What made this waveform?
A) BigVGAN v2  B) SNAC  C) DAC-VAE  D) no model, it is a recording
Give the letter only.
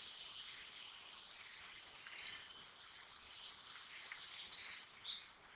D